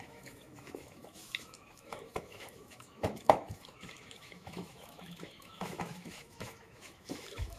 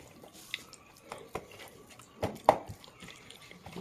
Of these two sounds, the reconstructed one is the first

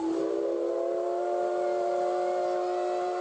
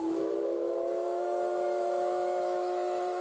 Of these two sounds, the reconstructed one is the second